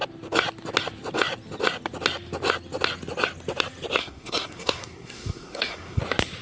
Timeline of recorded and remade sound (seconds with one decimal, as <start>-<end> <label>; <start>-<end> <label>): 0.0-4.0 recorded; 4.0-6.0 remade; 6.0-6.4 recorded